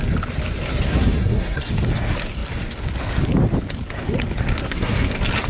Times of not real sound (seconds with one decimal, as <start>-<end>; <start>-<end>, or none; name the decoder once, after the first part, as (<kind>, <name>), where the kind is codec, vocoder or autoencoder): 0.9-1.7 (codec, SNAC); 4.6-5.1